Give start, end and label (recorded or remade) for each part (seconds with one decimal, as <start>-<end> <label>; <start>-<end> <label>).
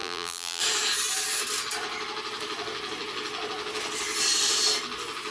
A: 0.0-0.6 remade; 0.6-5.3 recorded